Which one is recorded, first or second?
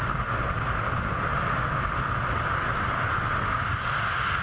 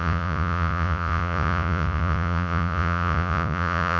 first